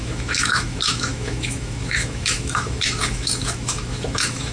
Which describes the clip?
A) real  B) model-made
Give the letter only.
B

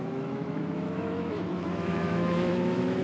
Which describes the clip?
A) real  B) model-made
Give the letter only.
B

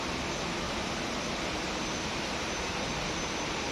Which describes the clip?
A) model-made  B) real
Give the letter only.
B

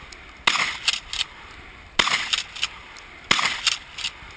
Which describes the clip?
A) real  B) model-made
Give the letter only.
A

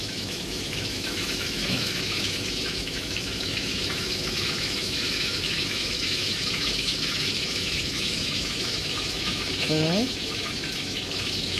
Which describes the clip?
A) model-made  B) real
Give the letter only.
A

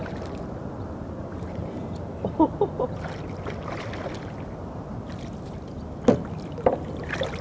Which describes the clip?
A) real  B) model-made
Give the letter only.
A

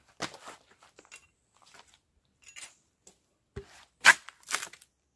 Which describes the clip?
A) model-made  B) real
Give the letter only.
B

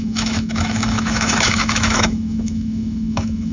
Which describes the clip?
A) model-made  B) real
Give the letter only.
A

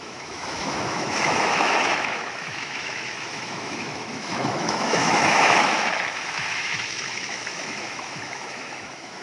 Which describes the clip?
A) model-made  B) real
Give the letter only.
A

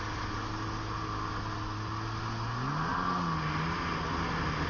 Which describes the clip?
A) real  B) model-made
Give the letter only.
A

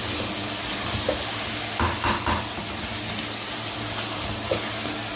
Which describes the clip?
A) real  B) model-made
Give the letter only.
A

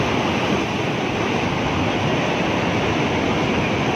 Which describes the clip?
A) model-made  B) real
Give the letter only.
B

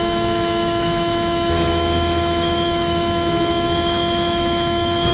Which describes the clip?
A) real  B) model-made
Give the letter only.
B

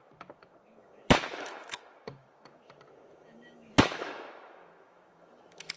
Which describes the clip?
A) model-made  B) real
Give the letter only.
A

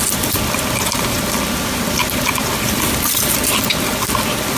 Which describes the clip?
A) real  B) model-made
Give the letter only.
A